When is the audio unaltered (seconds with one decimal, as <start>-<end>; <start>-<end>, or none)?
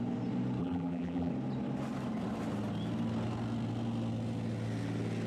0.0-0.6; 1.3-5.3